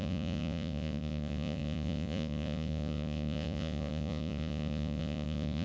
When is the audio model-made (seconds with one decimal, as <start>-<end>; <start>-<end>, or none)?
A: 0.0-5.6